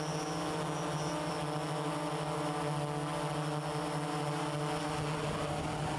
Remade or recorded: recorded